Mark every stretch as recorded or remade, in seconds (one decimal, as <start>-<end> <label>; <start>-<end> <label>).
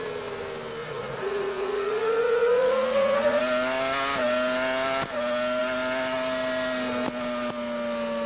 0.0-0.8 recorded; 0.8-3.4 remade; 3.4-8.3 recorded